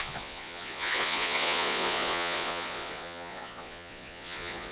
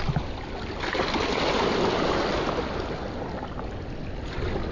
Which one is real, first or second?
second